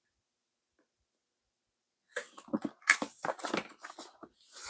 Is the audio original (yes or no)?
yes